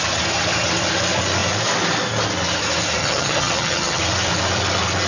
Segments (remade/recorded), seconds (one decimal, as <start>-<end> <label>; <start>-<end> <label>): 0.0-3.0 recorded; 3.0-4.0 remade; 4.0-5.1 recorded